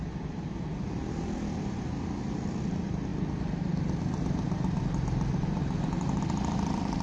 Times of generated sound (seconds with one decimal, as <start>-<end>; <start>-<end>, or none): 0.0-0.7; 2.6-3.1; 6.2-7.0